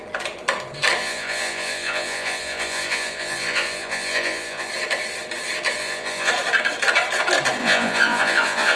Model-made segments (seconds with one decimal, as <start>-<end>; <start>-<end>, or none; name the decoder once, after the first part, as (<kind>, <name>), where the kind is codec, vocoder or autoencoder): 1.0-4.7 (vocoder, Vocos); 5.8-6.3; 7.6-8.8